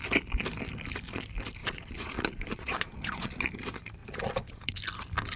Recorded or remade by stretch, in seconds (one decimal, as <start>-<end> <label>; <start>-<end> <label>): 0.0-1.6 recorded; 1.6-3.5 remade; 3.5-4.0 recorded; 4.0-4.8 remade; 4.8-5.4 recorded